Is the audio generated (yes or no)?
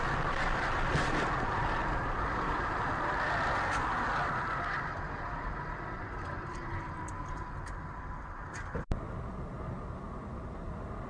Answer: no